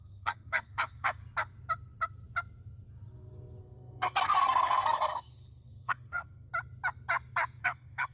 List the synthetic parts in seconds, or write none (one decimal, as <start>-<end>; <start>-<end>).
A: 0.0-1.2; 3.6-6.5; 7.6-8.1